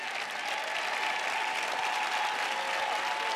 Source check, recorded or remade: recorded